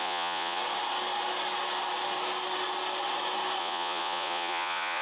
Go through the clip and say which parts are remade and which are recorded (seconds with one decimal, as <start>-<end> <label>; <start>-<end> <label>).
0.0-0.6 remade; 0.6-3.6 recorded; 3.6-5.0 remade